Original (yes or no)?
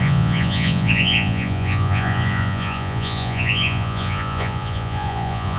no